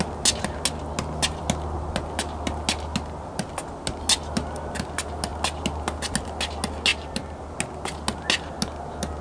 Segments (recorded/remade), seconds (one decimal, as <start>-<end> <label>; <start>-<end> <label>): 0.0-9.2 recorded